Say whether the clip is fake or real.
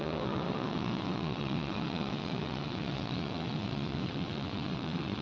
fake